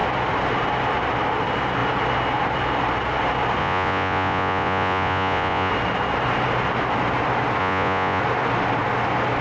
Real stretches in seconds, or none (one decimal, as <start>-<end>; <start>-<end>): 0.0-3.6; 5.7-7.6; 8.2-9.4